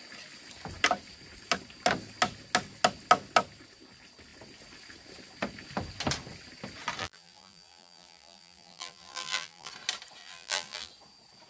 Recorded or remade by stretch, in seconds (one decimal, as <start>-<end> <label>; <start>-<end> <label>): 0.0-7.0 recorded; 7.0-9.7 remade; 9.7-10.2 recorded; 10.2-10.9 remade; 10.9-11.5 recorded